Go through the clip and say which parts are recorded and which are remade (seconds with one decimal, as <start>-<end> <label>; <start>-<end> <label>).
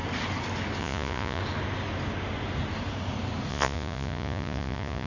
0.0-0.8 recorded; 0.8-1.4 remade; 1.4-3.5 recorded; 3.5-5.1 remade